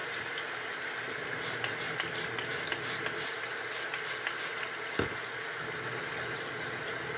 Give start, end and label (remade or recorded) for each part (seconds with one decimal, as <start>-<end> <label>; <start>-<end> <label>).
0.0-7.2 recorded